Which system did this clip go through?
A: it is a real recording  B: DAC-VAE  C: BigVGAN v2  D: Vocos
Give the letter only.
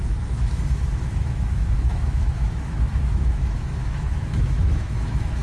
B